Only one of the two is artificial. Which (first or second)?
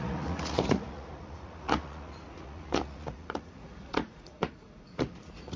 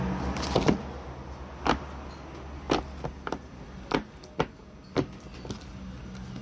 first